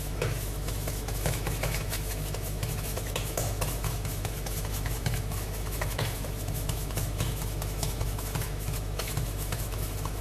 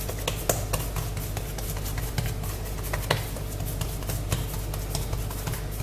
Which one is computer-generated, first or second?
first